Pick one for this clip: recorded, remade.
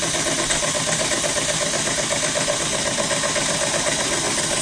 recorded